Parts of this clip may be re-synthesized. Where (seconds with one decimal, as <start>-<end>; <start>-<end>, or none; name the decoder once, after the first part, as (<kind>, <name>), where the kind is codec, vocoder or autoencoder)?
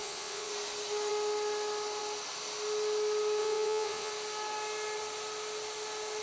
0.0-0.5 (vocoder, WaveNeXt); 3.4-4.1